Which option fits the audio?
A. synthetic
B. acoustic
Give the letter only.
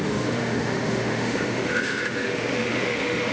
A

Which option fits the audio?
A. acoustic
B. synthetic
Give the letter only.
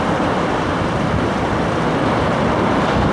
A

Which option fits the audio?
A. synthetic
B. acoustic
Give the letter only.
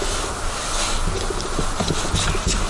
B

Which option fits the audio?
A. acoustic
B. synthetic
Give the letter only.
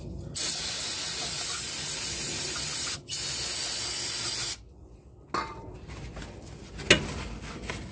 A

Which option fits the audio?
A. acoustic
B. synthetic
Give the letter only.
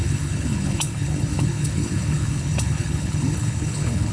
B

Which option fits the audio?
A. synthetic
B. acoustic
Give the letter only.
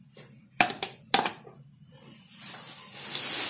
B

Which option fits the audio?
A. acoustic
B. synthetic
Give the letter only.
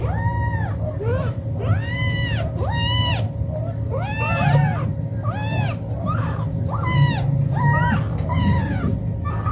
A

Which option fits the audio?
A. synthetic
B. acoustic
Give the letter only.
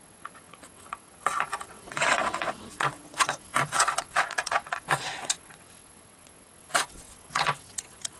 A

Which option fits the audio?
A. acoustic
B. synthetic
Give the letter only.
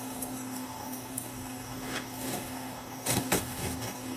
B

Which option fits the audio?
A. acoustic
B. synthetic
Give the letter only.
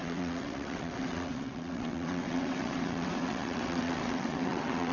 B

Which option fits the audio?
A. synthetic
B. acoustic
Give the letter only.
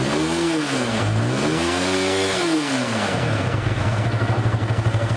A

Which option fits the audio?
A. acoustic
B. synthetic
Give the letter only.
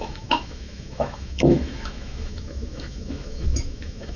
B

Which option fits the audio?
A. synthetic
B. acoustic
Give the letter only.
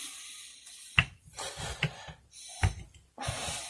B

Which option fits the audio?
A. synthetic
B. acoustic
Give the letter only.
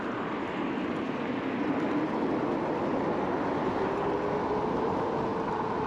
B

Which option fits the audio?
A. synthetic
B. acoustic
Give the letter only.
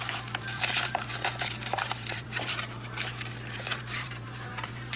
A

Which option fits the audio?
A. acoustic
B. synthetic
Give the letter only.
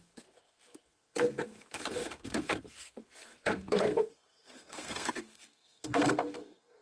B